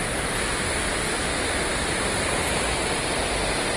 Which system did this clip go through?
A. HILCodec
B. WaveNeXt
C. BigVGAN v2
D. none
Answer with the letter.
D